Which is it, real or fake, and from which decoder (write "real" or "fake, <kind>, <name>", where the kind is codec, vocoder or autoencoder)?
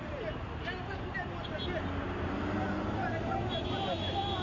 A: real